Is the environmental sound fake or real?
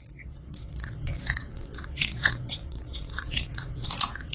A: fake